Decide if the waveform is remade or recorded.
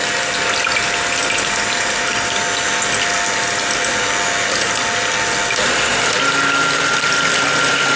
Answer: recorded